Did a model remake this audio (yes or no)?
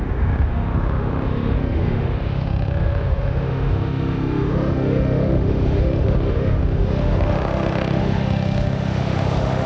yes